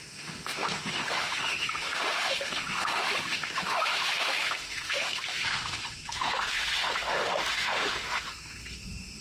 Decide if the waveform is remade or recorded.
remade